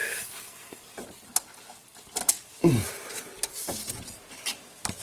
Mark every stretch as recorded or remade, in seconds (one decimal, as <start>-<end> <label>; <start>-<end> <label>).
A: 0.0-0.8 remade; 0.8-5.0 recorded